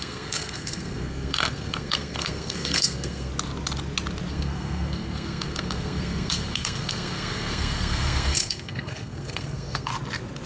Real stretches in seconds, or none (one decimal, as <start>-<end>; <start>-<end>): 3.3-4.3; 9.9-10.5